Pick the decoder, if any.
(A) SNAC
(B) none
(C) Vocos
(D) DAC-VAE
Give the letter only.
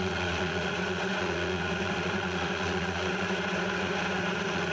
C